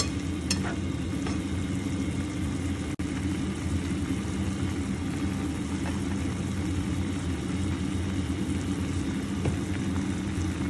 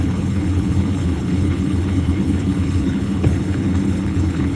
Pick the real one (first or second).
first